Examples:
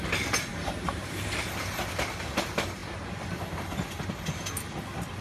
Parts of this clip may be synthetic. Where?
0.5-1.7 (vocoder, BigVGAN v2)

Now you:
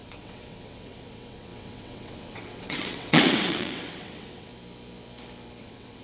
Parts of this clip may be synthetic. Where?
0.0-4.5 (vocoder, WaveNeXt); 5.6-6.0

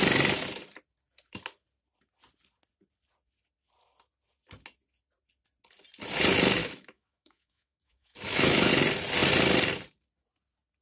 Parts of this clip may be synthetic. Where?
6.6-8.7 (autoencoder, DAC-VAE)